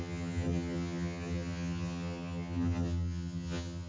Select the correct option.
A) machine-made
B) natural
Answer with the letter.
A